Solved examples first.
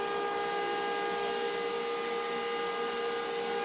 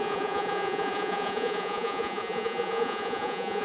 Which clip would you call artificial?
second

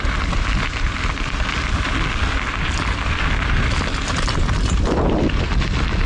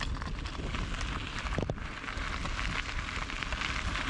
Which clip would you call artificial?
first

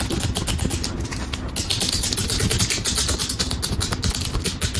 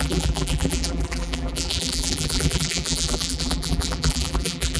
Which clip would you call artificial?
second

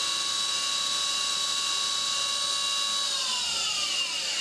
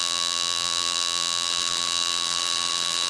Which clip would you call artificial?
second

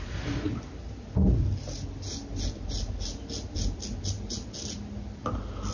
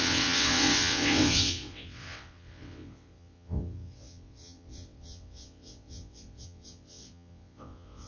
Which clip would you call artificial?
second